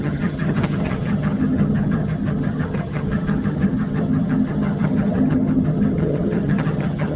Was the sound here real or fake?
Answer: fake